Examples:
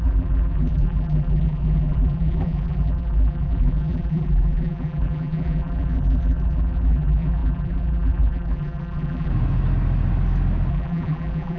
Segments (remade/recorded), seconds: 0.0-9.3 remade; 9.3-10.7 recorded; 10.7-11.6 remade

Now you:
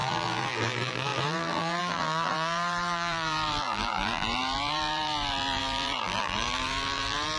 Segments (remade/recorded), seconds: 0.0-7.4 remade

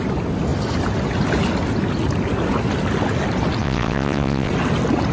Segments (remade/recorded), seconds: 0.0-3.6 recorded; 3.6-4.5 remade; 4.5-5.1 recorded